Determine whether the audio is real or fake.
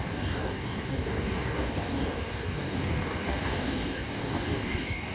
fake